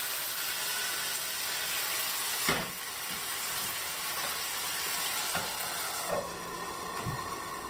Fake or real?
real